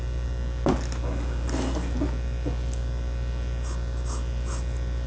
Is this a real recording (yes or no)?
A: yes